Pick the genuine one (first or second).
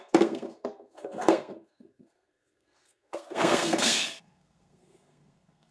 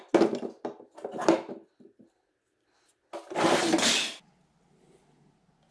second